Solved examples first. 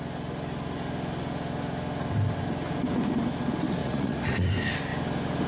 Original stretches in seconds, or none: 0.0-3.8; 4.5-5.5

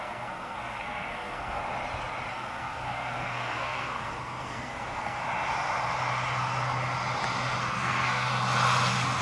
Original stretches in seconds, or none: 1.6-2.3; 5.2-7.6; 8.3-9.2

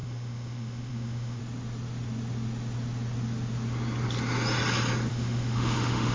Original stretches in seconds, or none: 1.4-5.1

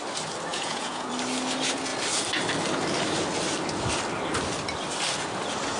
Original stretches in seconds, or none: 0.0-0.5; 1.1-5.8

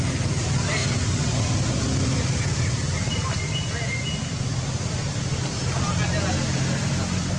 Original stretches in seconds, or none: 0.0-7.4

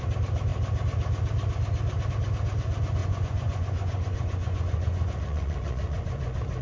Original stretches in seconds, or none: 0.0-3.0

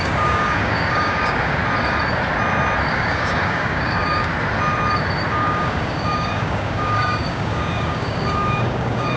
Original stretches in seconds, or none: 1.6-2.9; 4.3-5.3

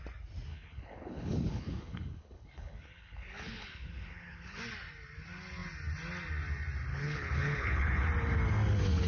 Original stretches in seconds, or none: 0.0-0.5; 4.6-6.9; 8.1-9.1